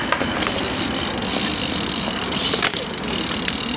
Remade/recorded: remade